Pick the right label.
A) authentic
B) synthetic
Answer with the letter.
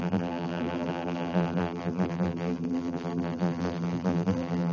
B